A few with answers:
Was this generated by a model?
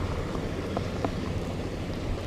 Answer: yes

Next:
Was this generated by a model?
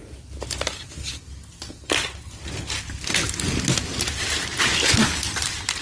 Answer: no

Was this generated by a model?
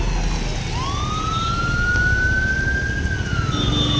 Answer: no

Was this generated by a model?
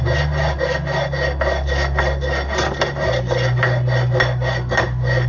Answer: no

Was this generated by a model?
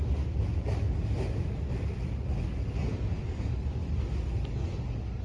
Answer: no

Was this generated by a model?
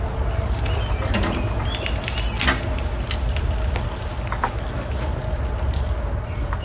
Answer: no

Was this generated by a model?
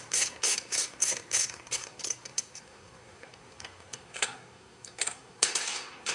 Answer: yes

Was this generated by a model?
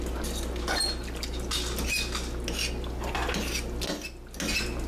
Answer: no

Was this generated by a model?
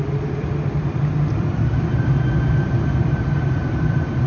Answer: yes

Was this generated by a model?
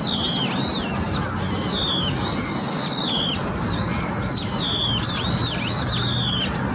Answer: no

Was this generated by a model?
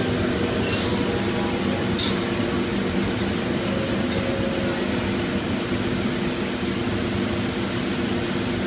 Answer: no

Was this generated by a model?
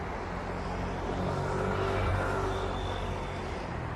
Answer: no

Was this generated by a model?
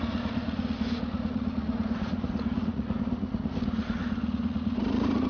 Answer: yes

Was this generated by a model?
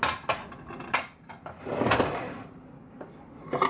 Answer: no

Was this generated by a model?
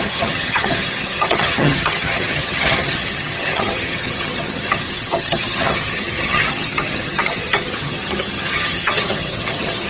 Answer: yes